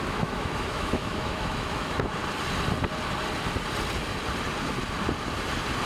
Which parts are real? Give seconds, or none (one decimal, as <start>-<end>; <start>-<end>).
2.2-5.9